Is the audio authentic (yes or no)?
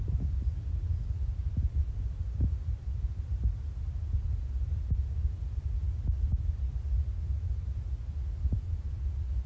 yes